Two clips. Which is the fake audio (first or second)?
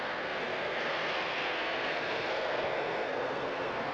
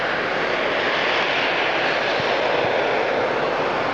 first